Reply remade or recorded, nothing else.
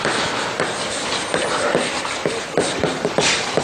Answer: recorded